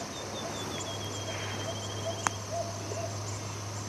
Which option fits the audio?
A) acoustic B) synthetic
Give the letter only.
B